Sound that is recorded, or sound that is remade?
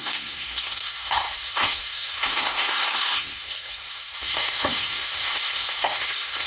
remade